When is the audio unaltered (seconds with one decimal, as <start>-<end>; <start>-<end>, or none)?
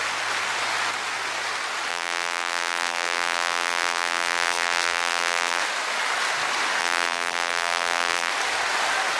0.0-1.9; 5.6-6.8; 8.3-9.2